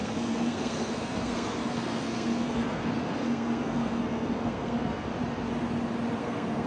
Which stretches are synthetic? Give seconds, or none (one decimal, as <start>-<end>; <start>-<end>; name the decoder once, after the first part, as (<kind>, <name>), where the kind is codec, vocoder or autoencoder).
0.0-5.1 (codec, SNAC); 6.2-6.7